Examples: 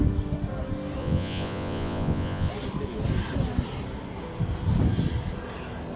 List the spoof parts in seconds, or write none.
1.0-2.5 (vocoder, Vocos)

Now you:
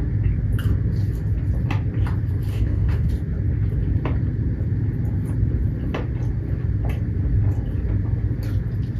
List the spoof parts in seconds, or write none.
2.5-3.1 (codec, DAC)